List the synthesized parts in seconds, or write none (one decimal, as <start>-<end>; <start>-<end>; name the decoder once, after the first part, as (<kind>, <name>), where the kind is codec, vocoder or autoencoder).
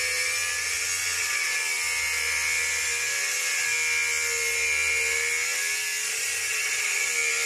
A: none